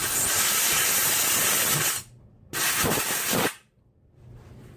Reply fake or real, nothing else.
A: real